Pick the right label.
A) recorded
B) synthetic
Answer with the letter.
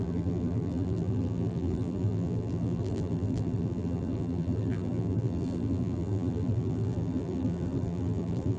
B